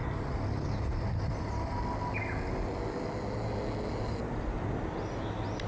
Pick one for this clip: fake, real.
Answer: real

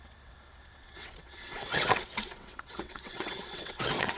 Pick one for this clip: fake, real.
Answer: fake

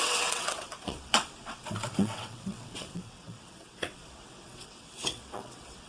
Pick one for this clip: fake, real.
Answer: fake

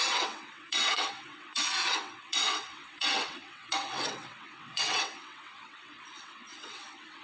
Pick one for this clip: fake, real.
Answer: fake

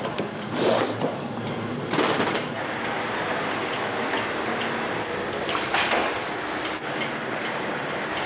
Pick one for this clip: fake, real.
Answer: real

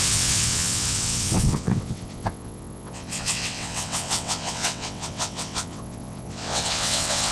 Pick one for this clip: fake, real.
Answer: fake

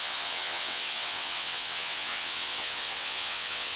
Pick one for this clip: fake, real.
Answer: fake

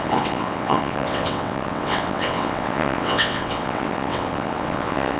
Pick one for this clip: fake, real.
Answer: fake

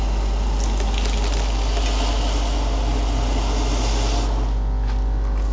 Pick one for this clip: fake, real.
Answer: real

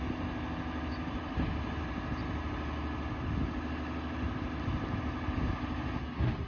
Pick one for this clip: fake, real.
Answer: real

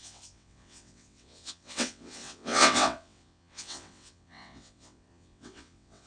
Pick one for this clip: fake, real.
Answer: fake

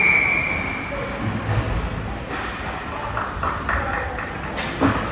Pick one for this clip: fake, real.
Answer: real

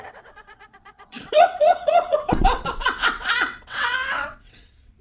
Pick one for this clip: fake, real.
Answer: fake